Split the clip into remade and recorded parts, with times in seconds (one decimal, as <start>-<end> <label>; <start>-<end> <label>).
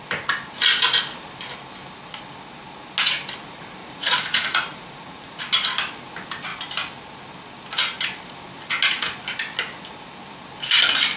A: 0.0-3.8 recorded; 3.8-5.4 remade; 5.4-11.2 recorded